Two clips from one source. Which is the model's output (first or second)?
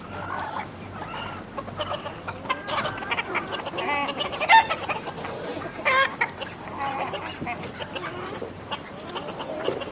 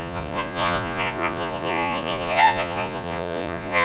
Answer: second